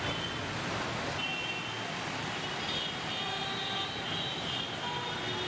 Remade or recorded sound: recorded